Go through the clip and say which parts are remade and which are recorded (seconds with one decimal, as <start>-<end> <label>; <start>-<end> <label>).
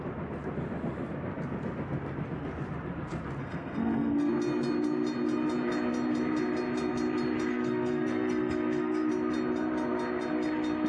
0.0-3.4 recorded; 3.4-4.3 remade; 4.3-7.5 recorded; 7.5-9.1 remade; 9.1-10.9 recorded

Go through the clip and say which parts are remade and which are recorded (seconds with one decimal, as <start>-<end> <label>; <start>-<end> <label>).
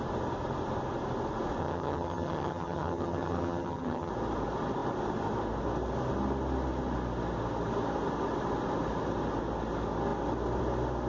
0.0-1.6 recorded; 1.6-4.1 remade; 4.1-11.1 recorded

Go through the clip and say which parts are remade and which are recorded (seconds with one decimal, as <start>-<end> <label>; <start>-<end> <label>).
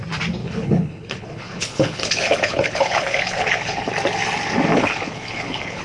0.0-0.4 recorded; 0.4-3.9 remade; 3.9-4.7 recorded; 4.7-5.8 remade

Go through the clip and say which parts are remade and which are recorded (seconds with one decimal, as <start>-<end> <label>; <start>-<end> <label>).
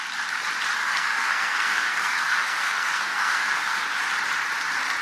0.0-0.8 recorded; 0.8-3.8 remade; 3.8-5.0 recorded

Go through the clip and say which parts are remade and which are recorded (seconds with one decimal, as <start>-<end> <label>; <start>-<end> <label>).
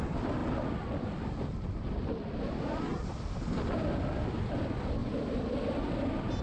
0.0-0.4 recorded; 0.4-2.3 remade; 2.3-5.0 recorded; 5.0-5.8 remade; 5.8-6.4 recorded